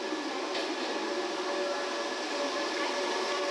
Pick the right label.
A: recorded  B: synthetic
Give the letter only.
A